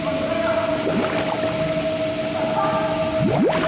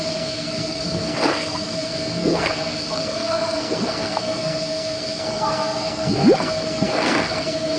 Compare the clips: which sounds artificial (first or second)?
second